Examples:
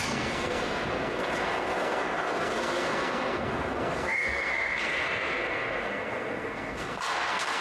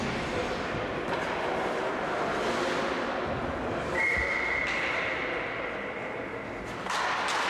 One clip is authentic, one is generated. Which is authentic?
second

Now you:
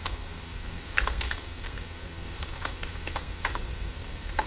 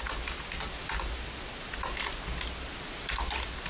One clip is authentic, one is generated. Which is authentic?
second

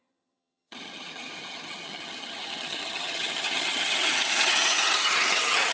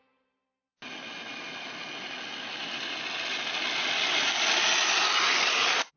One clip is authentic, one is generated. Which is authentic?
second